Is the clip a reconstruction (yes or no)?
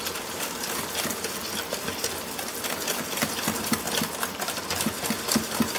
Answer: no